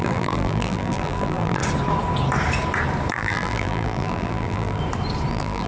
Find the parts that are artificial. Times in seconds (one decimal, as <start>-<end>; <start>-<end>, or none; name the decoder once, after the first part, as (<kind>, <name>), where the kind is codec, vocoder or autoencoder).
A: 0.0-1.6 (vocoder, BigVGAN v2); 3.1-4.8; 5.3-5.7